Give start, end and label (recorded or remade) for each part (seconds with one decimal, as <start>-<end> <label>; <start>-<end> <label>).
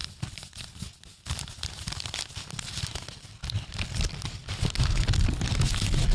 0.0-6.1 recorded